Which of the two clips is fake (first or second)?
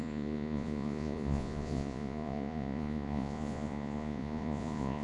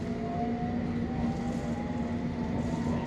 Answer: first